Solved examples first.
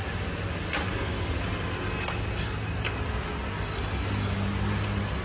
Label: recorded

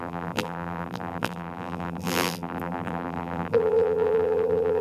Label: remade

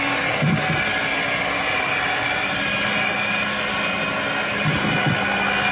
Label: recorded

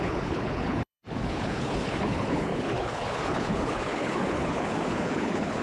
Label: remade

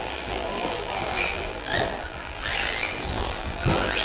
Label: remade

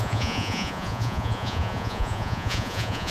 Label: remade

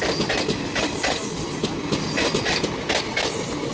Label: recorded